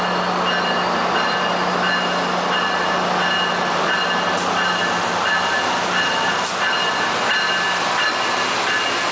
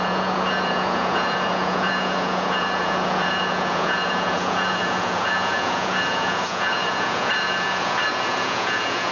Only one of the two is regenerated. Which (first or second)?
second